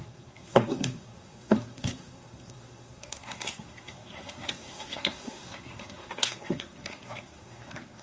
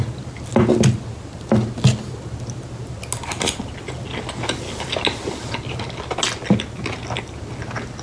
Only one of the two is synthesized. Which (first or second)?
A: first